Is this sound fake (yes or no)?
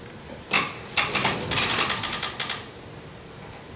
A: no